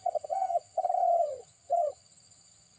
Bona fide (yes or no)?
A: no